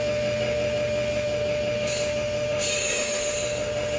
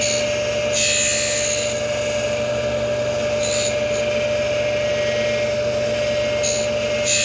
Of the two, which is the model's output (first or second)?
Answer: first